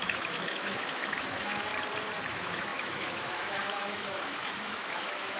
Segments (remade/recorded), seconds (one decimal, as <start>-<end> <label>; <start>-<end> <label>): 0.0-1.7 remade; 1.7-2.3 recorded; 2.3-5.4 remade

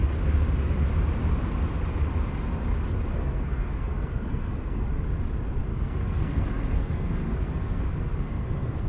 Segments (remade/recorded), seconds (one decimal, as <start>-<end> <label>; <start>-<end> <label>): 0.0-3.1 recorded; 3.1-4.9 remade; 4.9-5.7 recorded; 5.7-8.9 remade

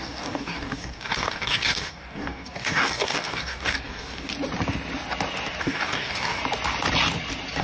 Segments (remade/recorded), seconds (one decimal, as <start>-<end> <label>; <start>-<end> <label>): 0.0-4.3 remade; 4.3-5.6 recorded; 5.6-6.4 remade; 6.4-7.6 recorded

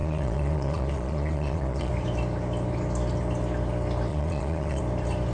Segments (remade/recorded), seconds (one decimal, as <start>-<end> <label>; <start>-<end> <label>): 0.0-1.9 remade; 1.9-4.1 recorded; 4.1-4.8 remade; 4.8-5.3 recorded